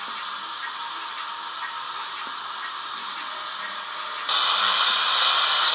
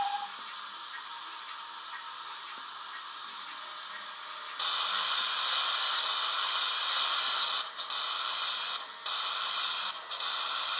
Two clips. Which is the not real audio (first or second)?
second